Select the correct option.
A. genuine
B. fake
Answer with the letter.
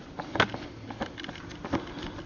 A